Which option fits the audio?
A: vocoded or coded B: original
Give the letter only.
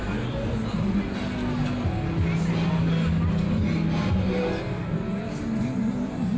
B